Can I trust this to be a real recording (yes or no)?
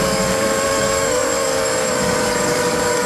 no